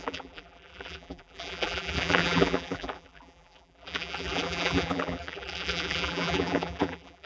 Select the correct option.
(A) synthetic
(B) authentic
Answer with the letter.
A